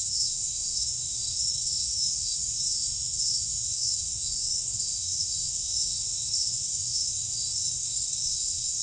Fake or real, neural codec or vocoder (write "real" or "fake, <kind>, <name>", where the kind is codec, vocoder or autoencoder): fake, autoencoder, DAC-VAE